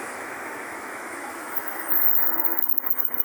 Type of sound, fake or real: fake